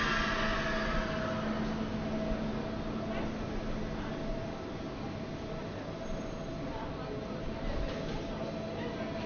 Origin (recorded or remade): recorded